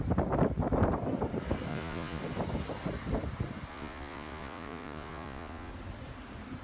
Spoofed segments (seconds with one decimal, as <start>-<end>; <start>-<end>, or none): 1.7-2.2; 3.7-5.7